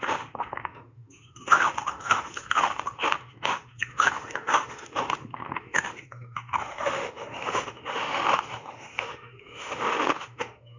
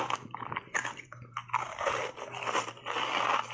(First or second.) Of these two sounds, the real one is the second